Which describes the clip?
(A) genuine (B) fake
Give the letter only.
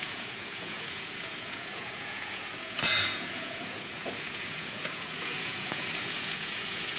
B